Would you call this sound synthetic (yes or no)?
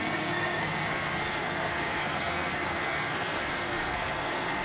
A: yes